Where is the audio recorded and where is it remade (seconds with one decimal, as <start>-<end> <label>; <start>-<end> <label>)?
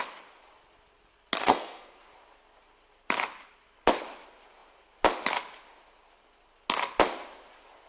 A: 0.0-1.4 recorded; 1.4-2.0 remade; 2.0-7.9 recorded